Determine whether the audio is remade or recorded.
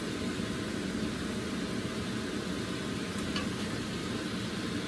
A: recorded